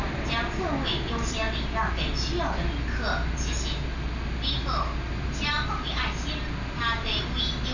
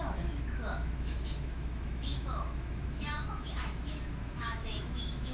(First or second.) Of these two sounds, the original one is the first